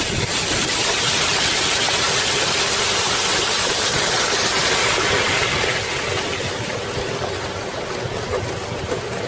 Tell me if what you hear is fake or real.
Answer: real